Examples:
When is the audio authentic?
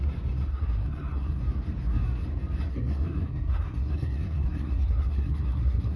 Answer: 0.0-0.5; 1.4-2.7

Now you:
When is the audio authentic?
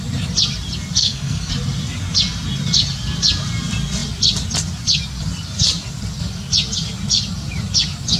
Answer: 0.0-1.0; 1.5-8.2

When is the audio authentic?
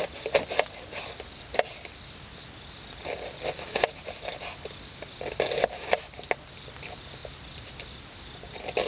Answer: 0.0-8.9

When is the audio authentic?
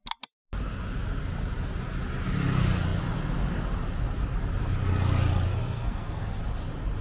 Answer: 0.0-5.5; 6.4-7.0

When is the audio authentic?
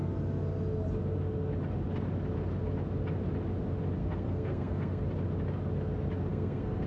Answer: 0.0-4.0; 5.0-6.3